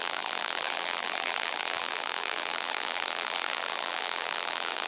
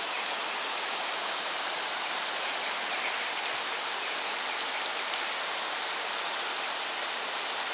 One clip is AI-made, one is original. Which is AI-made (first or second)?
first